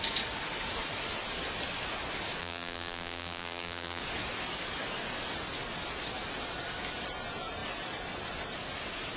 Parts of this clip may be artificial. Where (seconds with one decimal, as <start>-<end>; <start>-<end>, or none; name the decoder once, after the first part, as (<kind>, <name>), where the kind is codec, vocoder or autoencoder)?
2.4-4.0 (vocoder, BigVGAN v2)